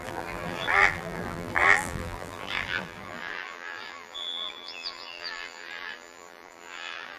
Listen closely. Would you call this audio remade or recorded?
remade